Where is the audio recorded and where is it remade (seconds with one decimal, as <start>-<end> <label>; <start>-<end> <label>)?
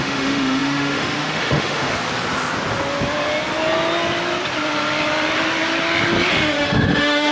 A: 0.0-1.9 remade; 1.9-6.3 recorded; 6.3-7.3 remade